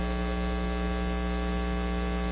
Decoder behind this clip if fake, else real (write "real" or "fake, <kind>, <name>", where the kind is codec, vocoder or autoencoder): real